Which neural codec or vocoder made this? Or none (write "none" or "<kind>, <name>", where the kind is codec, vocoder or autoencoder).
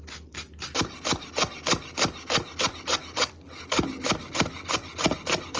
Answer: none